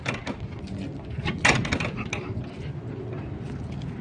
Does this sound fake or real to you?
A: real